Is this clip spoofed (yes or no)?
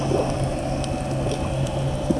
no